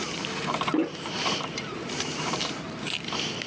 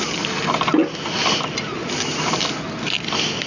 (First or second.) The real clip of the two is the second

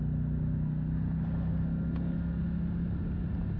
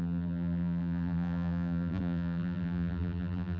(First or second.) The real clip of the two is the first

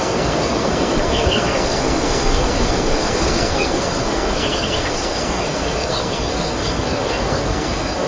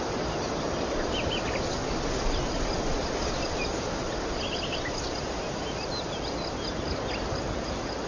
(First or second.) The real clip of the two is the second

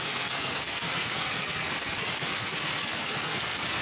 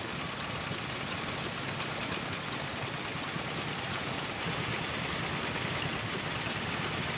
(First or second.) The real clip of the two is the second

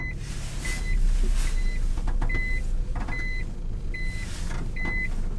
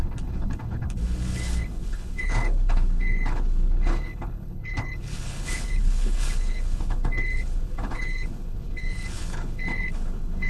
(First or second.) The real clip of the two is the first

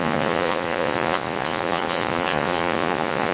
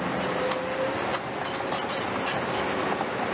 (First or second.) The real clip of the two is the second